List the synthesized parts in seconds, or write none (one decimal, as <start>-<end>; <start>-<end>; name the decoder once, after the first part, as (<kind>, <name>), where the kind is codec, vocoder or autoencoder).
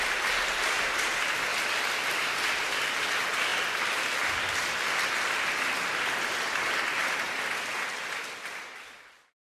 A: none